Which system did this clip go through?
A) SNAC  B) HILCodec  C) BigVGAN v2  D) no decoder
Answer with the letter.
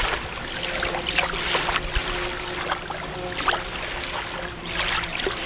D